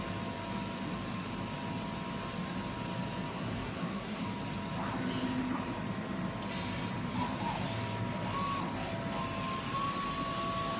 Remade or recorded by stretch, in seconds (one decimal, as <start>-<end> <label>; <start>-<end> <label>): 0.0-3.3 recorded; 3.3-4.2 remade; 4.2-10.8 recorded